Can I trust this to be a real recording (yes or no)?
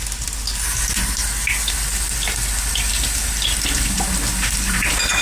yes